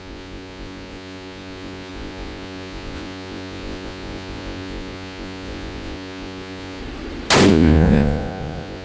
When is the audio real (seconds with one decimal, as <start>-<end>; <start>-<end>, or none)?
6.8-7.5